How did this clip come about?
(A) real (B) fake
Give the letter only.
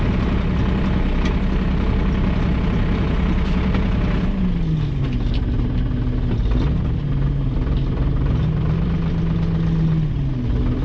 A